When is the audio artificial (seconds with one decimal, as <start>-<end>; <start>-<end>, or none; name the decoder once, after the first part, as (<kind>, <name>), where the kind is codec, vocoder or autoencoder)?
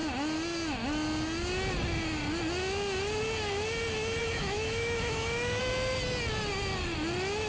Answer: 4.2-5.6 (autoencoder, DAC-VAE)